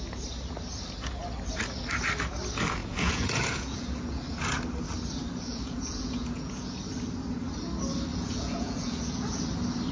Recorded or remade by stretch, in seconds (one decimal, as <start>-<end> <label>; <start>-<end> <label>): 0.0-2.8 recorded; 2.8-4.4 remade; 4.4-5.5 recorded; 5.5-6.8 remade; 6.8-8.1 recorded; 8.1-9.4 remade; 9.4-9.9 recorded